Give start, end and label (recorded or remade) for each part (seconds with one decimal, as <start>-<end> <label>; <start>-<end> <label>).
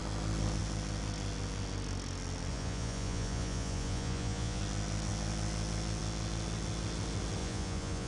0.0-2.5 recorded; 2.5-4.6 remade; 4.6-7.4 recorded; 7.4-8.1 remade